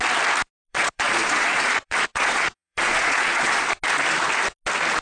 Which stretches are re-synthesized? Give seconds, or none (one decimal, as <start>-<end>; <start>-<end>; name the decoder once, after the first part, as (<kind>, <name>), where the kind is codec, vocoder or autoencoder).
0.7-3.7 (vocoder, Vocos)

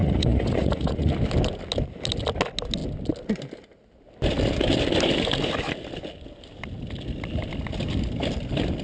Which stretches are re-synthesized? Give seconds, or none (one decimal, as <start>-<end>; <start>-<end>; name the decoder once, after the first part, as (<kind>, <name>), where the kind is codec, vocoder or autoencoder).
0.0-1.1 (vocoder, Vocos)

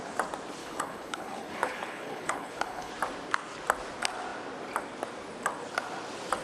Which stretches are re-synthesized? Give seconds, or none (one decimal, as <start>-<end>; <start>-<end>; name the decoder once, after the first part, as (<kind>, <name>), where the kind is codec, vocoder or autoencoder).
0.6-2.9 (codec, HILCodec)

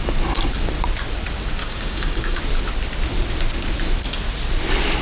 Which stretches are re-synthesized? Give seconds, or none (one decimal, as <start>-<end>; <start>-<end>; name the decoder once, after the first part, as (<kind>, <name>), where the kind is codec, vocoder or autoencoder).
1.6-2.4 (codec, DAC)